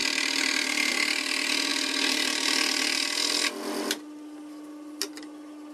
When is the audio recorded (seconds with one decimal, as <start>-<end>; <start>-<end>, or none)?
0.0-5.7